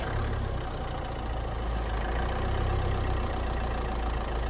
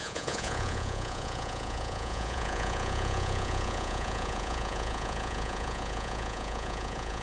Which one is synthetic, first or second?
second